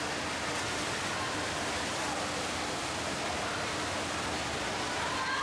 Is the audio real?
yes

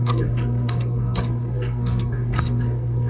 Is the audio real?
no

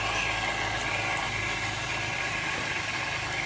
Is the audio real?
yes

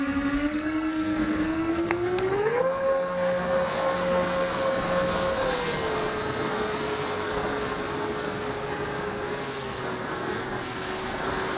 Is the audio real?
no